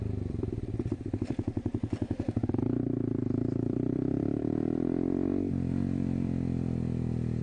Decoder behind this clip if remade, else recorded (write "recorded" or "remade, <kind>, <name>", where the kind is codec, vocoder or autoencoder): remade, vocoder, BigVGAN v2